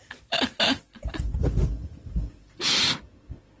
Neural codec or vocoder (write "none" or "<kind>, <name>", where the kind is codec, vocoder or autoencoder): none